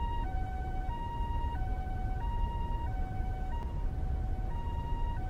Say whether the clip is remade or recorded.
recorded